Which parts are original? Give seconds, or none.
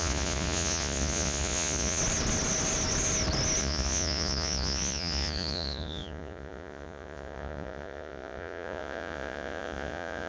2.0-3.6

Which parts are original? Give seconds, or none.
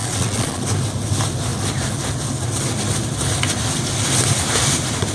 0.6-5.1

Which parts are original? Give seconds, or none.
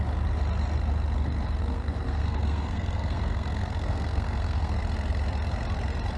0.0-1.6; 4.8-6.2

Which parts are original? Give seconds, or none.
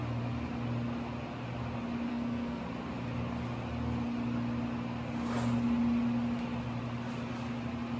0.0-2.1; 2.6-8.0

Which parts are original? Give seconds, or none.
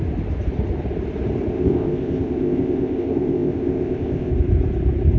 0.0-1.5; 4.3-5.2